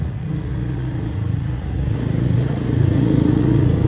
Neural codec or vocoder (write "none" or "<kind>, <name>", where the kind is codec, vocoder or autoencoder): vocoder, Vocos